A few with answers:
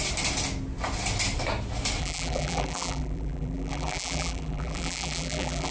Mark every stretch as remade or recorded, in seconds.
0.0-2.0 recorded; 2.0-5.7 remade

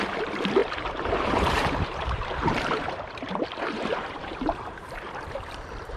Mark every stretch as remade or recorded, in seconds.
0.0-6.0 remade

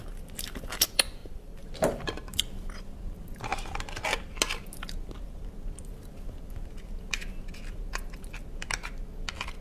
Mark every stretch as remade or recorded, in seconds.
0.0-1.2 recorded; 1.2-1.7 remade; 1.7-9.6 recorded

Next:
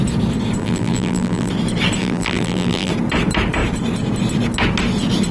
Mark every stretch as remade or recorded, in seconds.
0.0-0.6 recorded; 0.6-1.5 remade; 1.5-2.0 recorded; 2.0-2.9 remade; 2.9-5.3 recorded